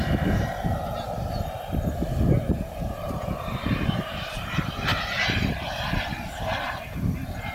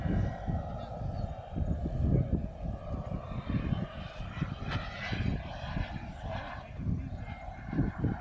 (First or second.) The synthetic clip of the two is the first